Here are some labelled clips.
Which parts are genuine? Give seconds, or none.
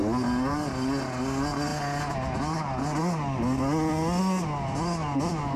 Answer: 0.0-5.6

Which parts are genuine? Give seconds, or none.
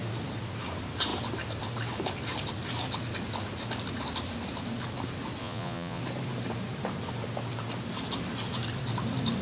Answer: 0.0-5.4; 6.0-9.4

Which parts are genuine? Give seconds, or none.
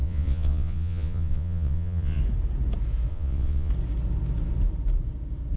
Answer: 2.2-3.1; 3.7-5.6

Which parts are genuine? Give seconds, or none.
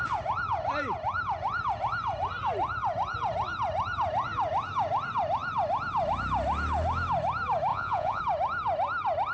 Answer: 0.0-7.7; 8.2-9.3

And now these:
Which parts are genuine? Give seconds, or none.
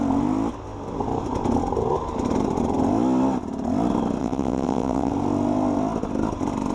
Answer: 0.0-4.2; 5.1-6.7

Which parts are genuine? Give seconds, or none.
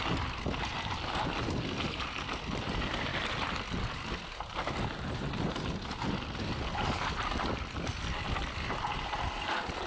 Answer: 0.0-9.9